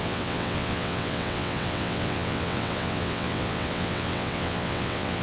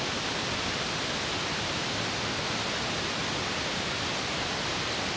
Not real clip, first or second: first